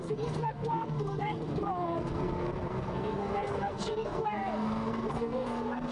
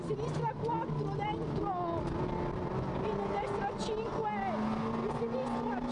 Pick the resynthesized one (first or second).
first